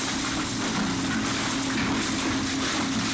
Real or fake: real